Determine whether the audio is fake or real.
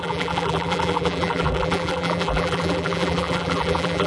fake